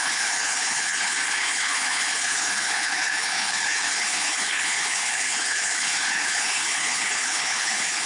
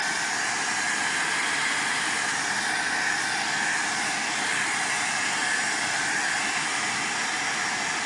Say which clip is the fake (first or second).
first